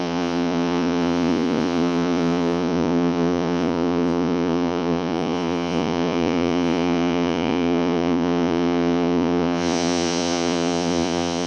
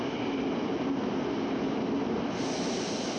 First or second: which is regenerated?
first